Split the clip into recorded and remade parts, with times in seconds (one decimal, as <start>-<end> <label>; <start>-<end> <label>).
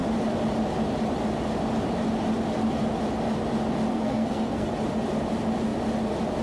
0.0-3.9 recorded; 3.9-4.7 remade; 4.7-6.4 recorded